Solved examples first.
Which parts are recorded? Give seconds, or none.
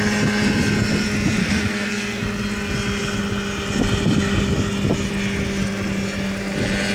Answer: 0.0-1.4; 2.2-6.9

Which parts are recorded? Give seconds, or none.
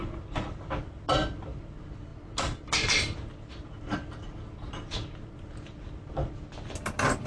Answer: 0.0-7.3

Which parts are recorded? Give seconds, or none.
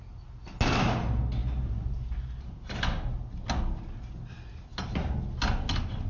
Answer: 0.0-6.1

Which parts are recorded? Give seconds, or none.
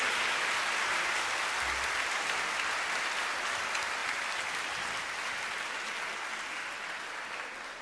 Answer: 0.0-7.8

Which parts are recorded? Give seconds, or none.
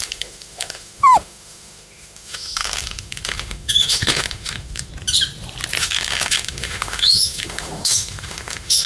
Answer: 4.9-5.8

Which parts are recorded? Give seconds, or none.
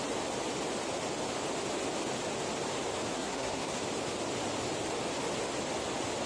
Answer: 0.0-3.1; 3.8-6.3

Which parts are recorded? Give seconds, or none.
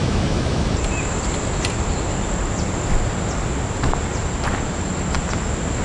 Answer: 0.7-5.8